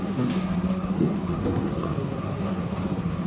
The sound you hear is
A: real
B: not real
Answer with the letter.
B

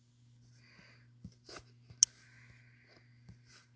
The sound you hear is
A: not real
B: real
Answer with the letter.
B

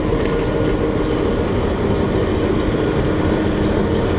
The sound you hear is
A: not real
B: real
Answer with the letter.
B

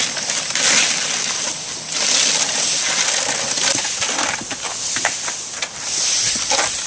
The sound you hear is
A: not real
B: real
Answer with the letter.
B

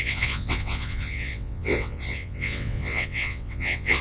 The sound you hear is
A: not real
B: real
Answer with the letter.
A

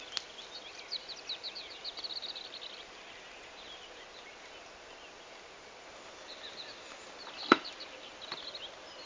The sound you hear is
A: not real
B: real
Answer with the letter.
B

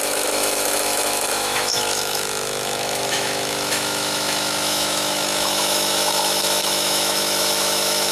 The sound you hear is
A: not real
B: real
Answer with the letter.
A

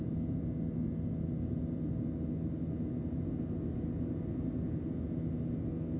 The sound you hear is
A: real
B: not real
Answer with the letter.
A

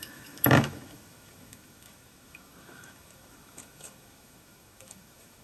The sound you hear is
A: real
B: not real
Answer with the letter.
B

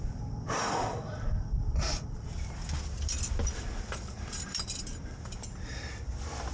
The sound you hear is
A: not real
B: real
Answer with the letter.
A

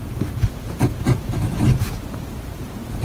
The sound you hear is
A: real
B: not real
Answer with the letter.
A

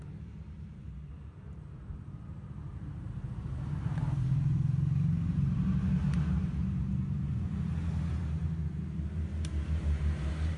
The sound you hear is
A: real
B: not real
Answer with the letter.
B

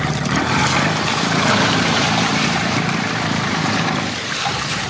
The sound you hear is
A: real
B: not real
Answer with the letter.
B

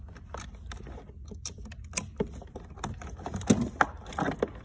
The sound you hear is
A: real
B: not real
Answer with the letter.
A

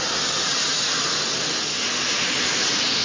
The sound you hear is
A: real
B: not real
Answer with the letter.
A